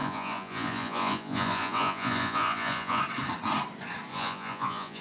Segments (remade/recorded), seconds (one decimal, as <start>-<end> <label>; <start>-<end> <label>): 0.0-3.0 remade; 3.0-4.1 recorded; 4.1-5.0 remade